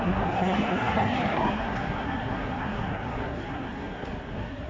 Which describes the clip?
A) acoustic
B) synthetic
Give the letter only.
B